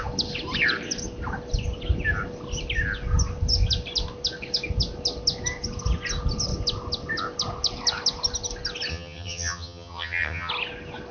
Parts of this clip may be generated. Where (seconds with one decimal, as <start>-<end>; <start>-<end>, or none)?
8.9-10.5